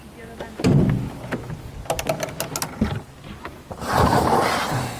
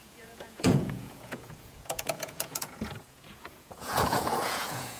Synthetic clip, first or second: second